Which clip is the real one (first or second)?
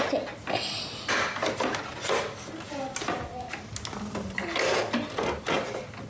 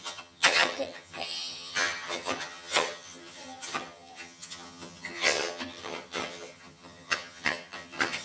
first